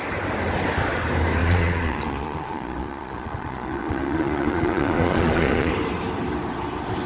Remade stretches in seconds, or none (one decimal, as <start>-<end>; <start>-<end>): 1.4-5.7